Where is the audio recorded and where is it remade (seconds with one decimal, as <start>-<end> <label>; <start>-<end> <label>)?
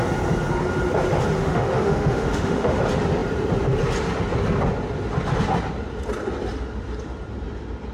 0.0-1.4 recorded; 1.4-2.8 remade; 2.8-7.9 recorded